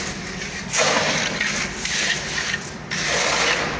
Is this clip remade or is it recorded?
recorded